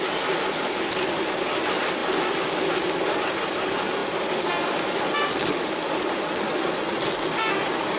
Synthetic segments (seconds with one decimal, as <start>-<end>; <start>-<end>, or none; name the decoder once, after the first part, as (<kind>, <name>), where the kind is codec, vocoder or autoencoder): none

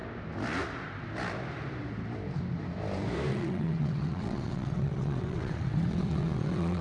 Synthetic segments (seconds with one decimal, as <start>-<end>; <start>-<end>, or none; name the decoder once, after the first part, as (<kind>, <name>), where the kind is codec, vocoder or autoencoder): 3.3-6.8 (vocoder, WaveNeXt)